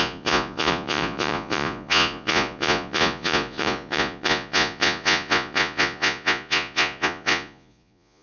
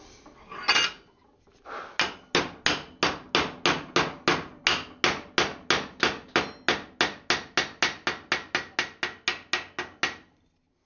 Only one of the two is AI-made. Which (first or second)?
first